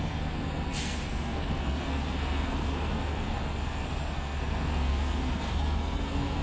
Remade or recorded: remade